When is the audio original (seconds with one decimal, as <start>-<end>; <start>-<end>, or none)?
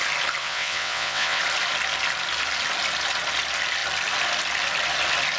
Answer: 0.0-0.4; 1.4-5.4